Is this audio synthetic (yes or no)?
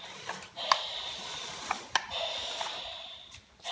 yes